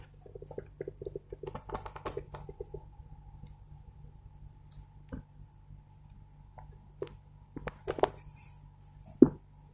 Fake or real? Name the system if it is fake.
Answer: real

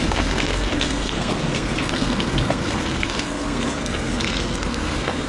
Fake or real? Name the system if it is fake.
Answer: fake, codec, SNAC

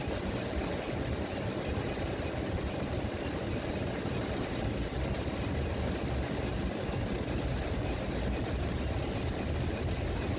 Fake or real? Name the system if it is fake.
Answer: real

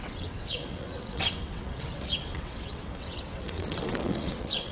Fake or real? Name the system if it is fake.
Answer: fake, vocoder, WaveNeXt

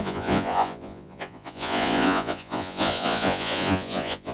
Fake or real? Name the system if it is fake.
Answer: fake, vocoder, Vocos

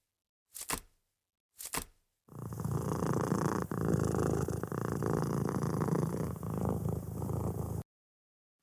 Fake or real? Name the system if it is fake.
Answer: real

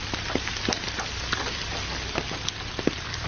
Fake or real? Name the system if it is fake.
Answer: real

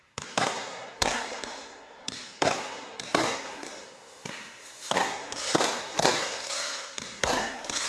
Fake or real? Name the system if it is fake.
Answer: fake, codec, SNAC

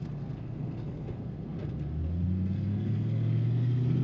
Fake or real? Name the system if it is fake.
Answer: fake, codec, SNAC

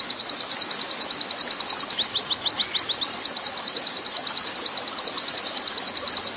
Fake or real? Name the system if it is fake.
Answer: real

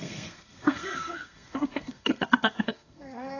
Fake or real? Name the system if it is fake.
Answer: fake, codec, SNAC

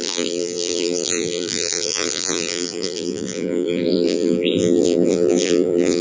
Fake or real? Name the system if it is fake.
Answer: fake, vocoder, BigVGAN v2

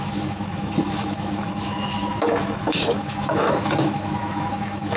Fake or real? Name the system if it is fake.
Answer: fake, autoencoder, DAC-VAE